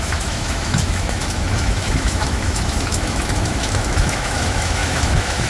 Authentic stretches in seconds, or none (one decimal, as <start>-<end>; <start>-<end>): none